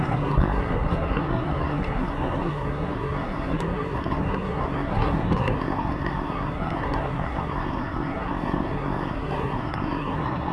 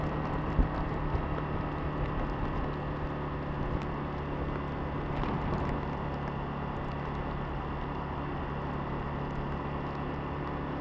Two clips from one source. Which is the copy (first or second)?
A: first